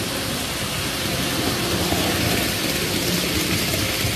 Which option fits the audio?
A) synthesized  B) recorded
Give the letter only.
B